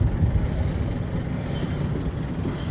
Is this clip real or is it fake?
real